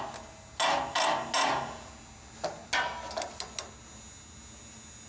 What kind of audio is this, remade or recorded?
recorded